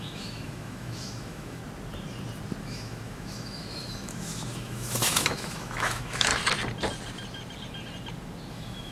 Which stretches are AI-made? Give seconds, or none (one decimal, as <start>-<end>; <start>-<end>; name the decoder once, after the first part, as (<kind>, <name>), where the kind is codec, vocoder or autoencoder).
0.0-1.6 (autoencoder, DAC-VAE); 2.6-6.3; 8.5-8.9